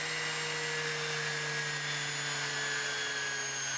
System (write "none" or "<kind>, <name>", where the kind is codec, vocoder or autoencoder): none